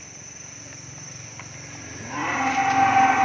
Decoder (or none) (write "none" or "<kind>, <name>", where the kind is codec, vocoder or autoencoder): none